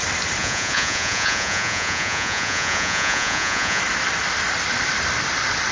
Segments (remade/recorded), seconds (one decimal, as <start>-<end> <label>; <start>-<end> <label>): 0.0-0.4 recorded; 0.4-3.8 remade; 3.8-5.7 recorded